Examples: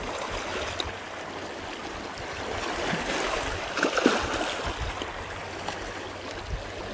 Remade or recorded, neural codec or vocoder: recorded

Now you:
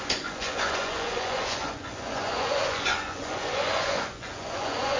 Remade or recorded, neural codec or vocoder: remade, vocoder, Vocos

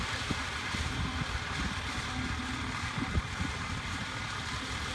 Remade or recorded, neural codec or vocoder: remade, vocoder, BigVGAN v2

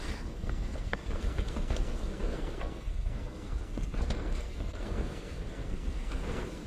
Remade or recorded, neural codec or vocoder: remade, codec, SNAC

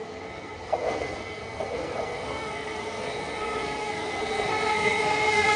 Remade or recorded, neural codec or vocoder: remade, codec, SNAC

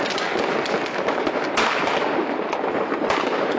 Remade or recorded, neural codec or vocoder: recorded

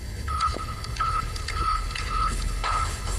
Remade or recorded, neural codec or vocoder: remade, codec, HILCodec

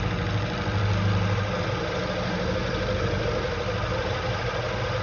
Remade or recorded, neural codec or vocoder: recorded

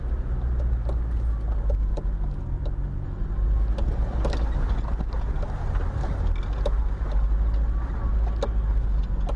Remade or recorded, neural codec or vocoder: recorded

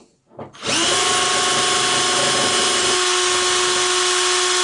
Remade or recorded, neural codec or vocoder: recorded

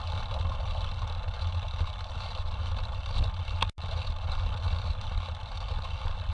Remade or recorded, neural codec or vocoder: recorded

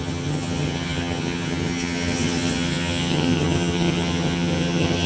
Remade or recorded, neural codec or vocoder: remade, vocoder, HiFi-GAN